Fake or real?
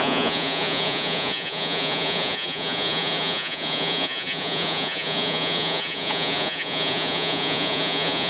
fake